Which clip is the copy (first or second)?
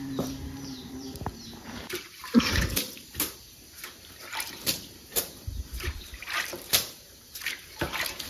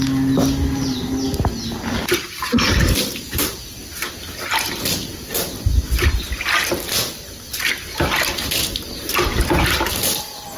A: first